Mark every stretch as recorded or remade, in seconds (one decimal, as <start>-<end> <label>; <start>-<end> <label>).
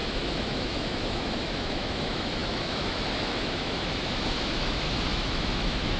0.0-6.0 remade